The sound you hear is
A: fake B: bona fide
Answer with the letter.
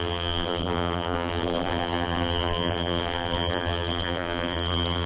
A